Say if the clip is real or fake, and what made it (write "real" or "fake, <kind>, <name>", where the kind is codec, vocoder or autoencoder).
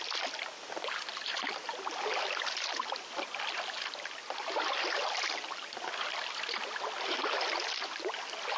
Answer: real